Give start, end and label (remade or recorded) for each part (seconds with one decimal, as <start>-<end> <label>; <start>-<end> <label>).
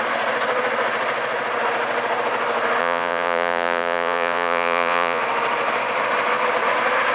0.0-2.8 recorded; 2.8-5.2 remade; 5.2-7.1 recorded